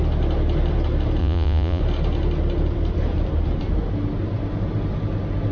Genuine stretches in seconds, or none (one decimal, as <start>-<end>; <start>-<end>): 0.0-1.2; 1.8-5.5